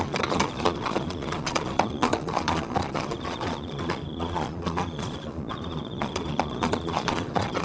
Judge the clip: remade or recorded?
remade